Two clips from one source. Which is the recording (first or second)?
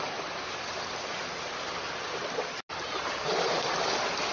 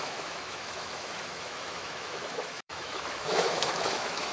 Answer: first